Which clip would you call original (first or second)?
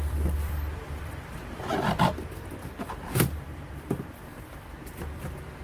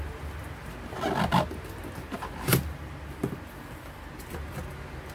second